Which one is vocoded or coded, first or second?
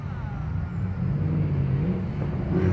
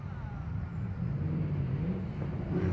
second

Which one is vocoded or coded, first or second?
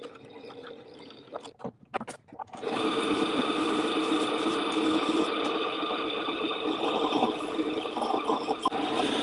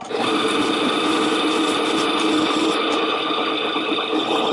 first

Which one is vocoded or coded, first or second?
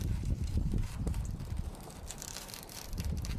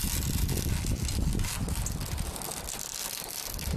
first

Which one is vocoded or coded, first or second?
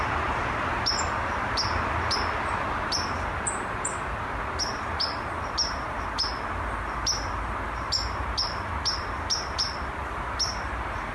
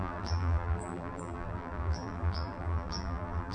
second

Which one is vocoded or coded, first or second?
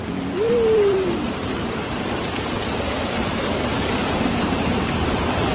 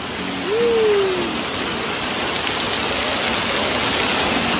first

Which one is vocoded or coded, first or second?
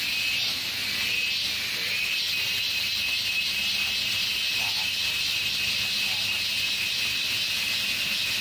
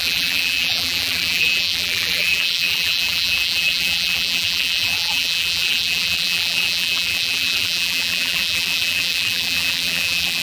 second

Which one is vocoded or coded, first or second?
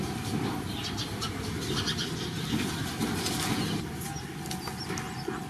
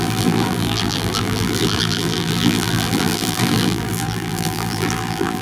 second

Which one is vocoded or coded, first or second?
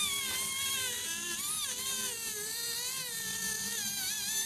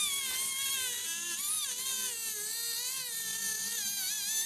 first